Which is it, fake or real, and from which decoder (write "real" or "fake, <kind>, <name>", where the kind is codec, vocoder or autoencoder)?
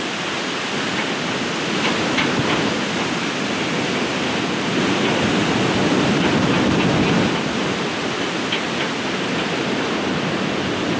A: real